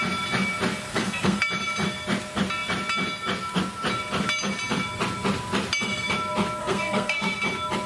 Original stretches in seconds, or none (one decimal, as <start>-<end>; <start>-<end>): 0.0-0.9; 1.4-6.6; 7.4-7.9